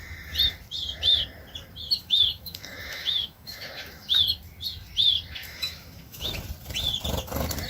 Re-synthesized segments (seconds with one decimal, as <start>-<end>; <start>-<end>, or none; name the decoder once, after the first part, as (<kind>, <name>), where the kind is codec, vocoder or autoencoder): 2.0-4.2 (autoencoder, DAC-VAE); 5.4-6.4